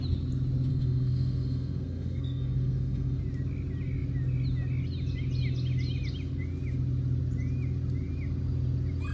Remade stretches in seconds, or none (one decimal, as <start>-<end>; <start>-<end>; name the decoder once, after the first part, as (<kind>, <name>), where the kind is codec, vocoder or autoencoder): 0.7-3.2 (codec, SNAC)